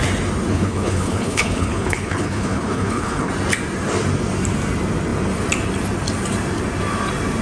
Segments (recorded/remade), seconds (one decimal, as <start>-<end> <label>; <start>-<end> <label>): 0.0-0.5 recorded; 0.5-3.3 remade; 3.3-7.4 recorded